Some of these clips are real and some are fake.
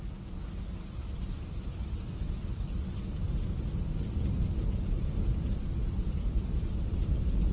real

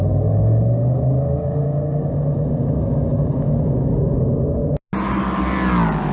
real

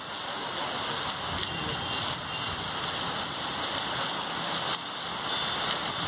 real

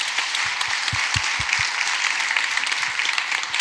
fake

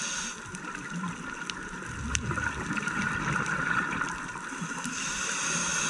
real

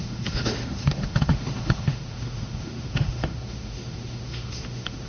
fake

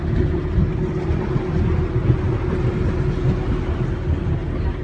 real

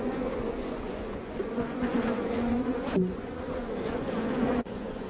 fake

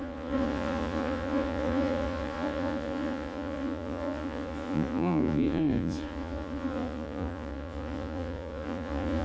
fake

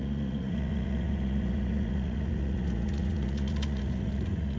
fake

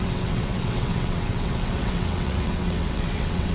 fake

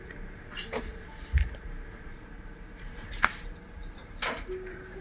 fake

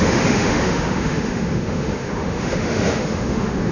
fake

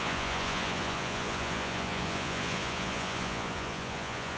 fake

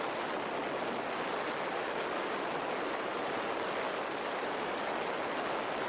real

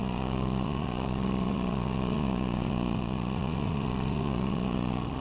fake